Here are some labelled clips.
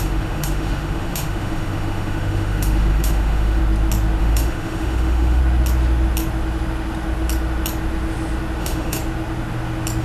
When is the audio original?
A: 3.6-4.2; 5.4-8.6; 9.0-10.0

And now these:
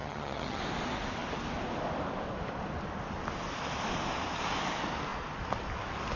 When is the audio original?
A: 0.6-6.2